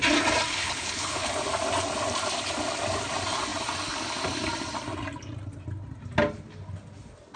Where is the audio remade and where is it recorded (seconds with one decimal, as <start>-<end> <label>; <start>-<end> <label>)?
0.0-0.5 recorded; 0.5-1.3 remade; 1.3-7.4 recorded